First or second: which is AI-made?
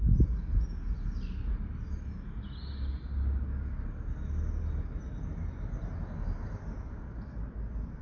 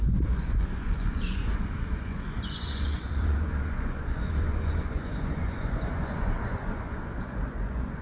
second